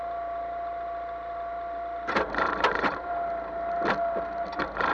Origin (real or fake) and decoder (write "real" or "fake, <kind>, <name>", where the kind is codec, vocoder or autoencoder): real